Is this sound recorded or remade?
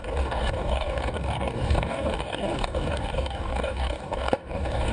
remade